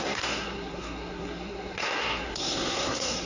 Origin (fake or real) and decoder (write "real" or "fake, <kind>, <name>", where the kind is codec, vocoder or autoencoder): fake, codec, SNAC